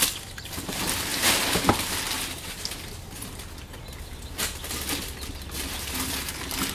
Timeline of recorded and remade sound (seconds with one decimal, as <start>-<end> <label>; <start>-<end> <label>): 0.0-6.7 recorded

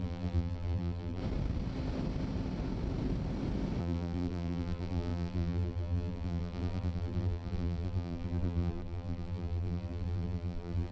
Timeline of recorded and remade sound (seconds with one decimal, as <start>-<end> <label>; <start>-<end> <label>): 0.0-1.2 remade; 1.2-3.8 recorded; 3.8-10.9 remade